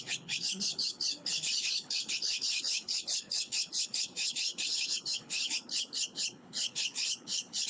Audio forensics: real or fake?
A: fake